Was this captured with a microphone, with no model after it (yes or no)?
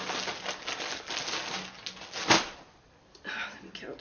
yes